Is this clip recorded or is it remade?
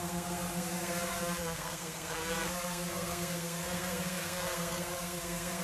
remade